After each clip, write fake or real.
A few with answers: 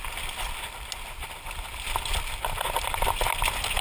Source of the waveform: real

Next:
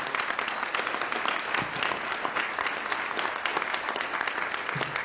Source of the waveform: real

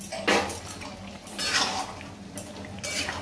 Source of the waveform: real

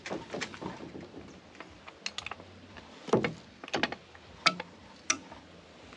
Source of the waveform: real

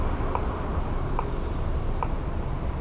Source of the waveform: real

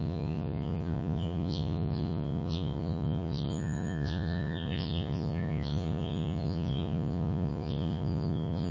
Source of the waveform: fake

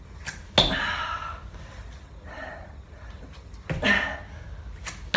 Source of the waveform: real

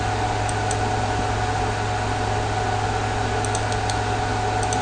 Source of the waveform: real